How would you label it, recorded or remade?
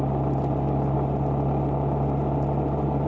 recorded